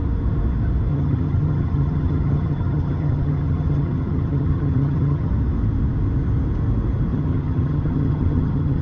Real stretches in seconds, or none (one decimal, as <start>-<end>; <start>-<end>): 0.0-0.9; 5.3-7.1